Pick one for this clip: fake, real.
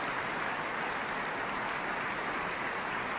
real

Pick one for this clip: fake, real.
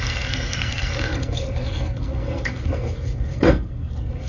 fake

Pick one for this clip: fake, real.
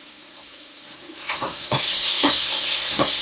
fake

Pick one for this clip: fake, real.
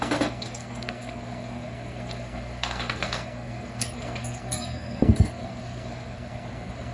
fake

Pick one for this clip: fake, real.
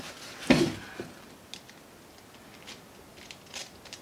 real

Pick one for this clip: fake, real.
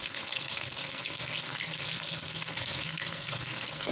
fake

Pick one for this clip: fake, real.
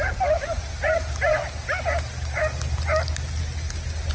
real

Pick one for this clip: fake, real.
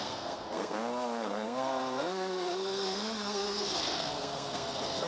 fake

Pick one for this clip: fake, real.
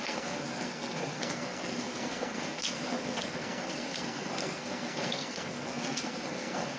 fake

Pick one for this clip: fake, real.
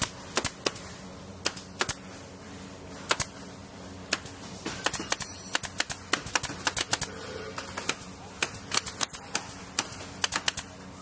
real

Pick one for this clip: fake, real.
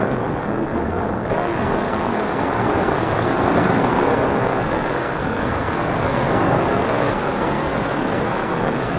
fake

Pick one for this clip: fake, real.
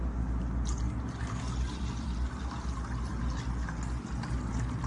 real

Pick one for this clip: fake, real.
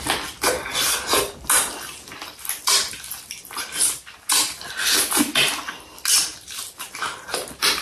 real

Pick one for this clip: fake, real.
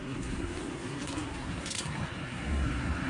fake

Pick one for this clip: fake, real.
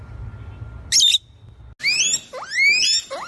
real